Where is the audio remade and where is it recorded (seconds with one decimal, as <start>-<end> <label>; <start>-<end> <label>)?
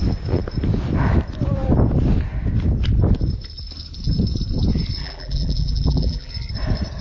0.0-5.0 recorded; 5.0-6.3 remade; 6.3-7.0 recorded